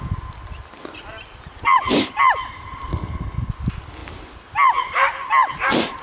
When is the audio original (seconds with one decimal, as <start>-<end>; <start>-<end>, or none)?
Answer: 0.0-2.9; 3.5-6.0

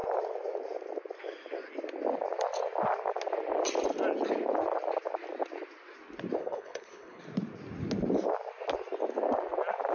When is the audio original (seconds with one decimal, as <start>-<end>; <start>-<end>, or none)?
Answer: 0.0-6.4; 7.2-9.9

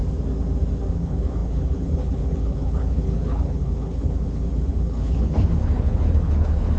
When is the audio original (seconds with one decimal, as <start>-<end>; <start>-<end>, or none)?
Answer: 0.0-0.9

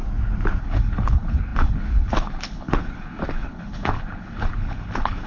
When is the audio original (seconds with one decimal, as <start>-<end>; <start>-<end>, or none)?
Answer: 0.0-0.6

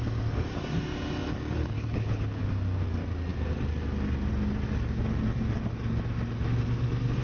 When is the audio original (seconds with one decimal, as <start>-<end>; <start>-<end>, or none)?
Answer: 0.0-1.6; 2.4-7.2

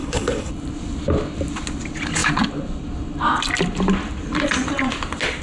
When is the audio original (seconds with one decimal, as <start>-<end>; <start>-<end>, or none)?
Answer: 0.5-5.4

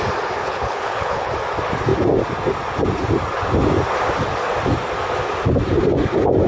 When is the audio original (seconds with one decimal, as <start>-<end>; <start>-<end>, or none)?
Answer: 0.0-0.4; 1.3-6.5

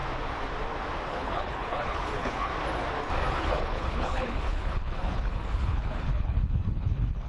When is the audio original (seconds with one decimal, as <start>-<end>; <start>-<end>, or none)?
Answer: 0.0-1.1; 2.5-3.3